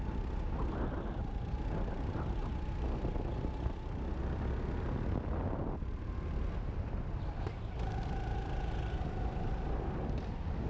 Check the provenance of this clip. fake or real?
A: real